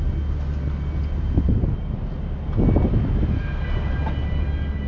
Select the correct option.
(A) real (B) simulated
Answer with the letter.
A